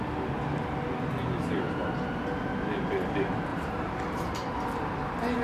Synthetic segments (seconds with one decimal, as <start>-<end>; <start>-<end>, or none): 3.5-4.8